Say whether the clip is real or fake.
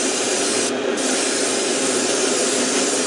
real